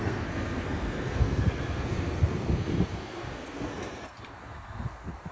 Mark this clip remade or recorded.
remade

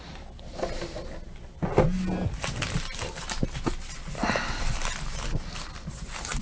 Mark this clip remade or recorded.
recorded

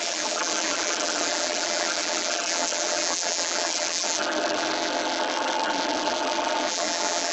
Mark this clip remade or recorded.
remade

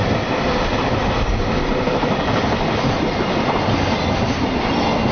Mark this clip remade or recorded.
recorded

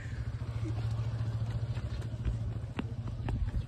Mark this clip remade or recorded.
recorded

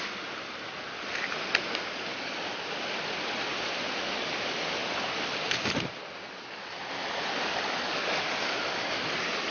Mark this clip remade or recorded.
recorded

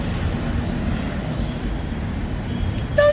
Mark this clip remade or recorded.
recorded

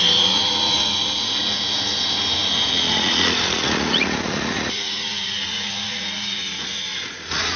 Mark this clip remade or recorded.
remade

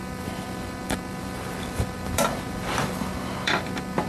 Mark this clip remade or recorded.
remade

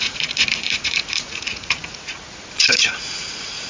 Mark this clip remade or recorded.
remade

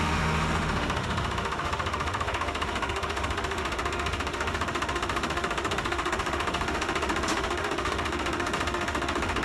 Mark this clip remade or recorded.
remade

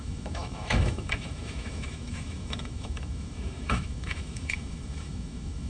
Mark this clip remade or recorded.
remade